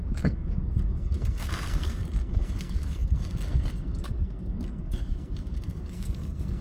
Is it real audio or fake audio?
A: fake